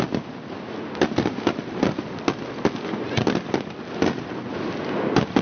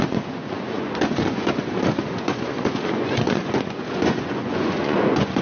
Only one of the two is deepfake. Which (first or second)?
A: second